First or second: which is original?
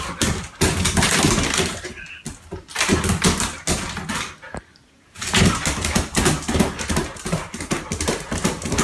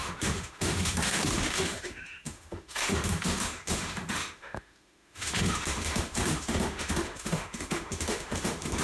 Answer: first